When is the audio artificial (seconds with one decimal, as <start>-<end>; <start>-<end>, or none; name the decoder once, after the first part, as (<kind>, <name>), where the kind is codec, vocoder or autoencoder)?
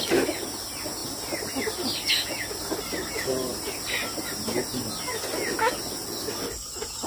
none